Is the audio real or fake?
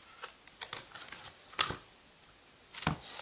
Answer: real